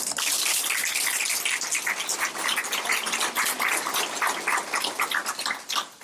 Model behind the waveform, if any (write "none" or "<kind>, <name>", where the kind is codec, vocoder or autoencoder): none